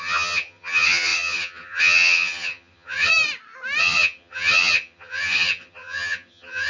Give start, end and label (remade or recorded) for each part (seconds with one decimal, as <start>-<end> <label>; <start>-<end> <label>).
0.0-3.1 remade; 3.1-3.8 recorded; 3.8-6.7 remade